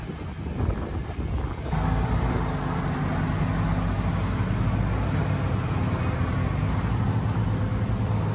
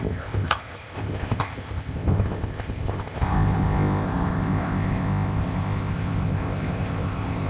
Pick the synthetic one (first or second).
second